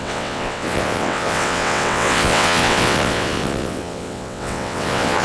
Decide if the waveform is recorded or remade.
remade